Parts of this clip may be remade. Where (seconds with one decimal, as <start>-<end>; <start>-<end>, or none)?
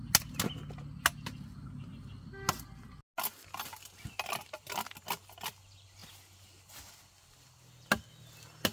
none